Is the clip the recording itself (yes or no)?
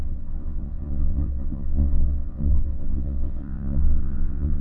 no